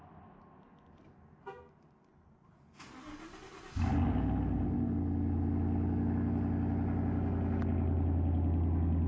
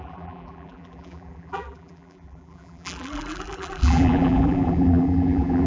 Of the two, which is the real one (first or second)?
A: first